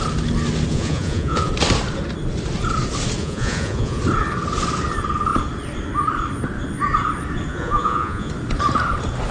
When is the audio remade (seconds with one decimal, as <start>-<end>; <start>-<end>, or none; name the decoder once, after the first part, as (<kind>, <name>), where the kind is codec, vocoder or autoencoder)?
0.7-1.5 (vocoder, Vocos); 3.2-4.0; 7.5-8.3

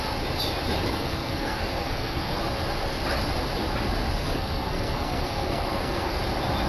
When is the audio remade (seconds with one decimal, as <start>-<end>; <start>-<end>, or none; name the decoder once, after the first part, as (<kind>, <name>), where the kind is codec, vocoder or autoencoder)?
0.9-2.4 (codec, SNAC); 4.2-6.2

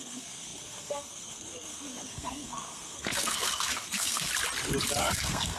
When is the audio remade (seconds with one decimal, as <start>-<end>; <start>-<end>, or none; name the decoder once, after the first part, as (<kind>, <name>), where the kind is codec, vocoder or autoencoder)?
0.0-4.3 (codec, SNAC); 5.0-5.6